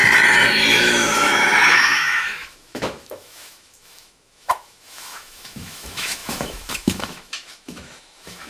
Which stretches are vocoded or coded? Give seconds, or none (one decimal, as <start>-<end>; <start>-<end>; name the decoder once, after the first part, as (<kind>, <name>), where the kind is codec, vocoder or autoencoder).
0.8-8.5 (autoencoder, DAC-VAE)